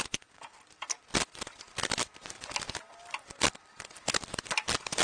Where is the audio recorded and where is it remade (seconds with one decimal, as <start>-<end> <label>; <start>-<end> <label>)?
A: 0.0-5.0 recorded